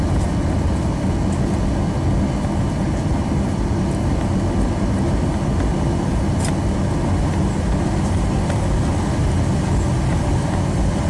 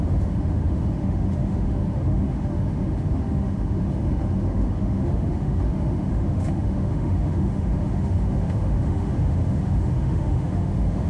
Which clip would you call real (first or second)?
first